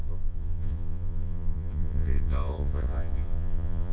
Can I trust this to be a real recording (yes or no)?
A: no